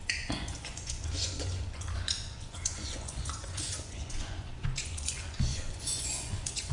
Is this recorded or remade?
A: remade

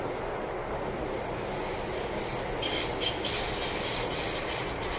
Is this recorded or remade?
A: recorded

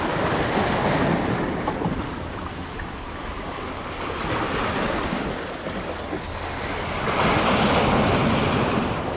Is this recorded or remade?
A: recorded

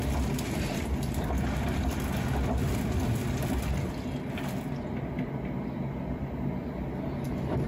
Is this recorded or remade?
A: recorded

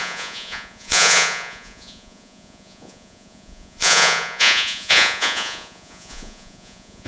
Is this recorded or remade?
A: remade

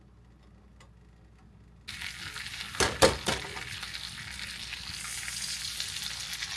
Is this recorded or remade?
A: recorded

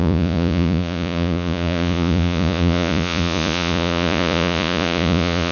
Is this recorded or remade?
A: remade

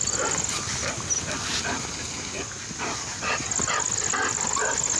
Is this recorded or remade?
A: recorded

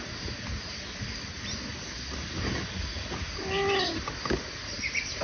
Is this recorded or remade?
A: recorded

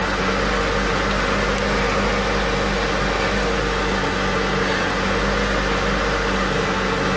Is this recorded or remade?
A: recorded